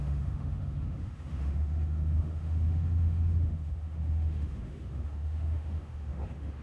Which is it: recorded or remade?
remade